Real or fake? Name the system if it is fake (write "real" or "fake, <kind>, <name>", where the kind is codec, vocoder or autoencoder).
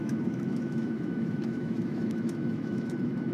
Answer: fake, autoencoder, DAC-VAE